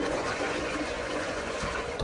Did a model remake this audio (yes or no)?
yes